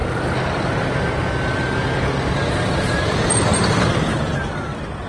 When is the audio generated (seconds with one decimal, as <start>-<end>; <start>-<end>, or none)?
none